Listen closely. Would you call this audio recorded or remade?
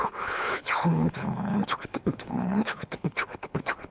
remade